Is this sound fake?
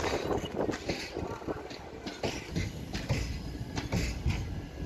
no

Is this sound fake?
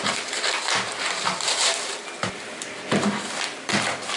yes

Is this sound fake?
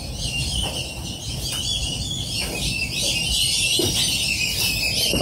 no